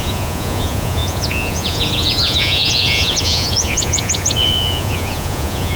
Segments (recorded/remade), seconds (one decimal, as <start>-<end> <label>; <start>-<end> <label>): 0.0-5.8 remade